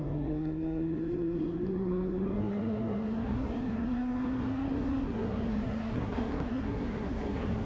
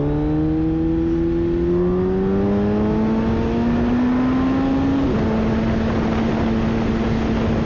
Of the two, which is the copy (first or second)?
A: first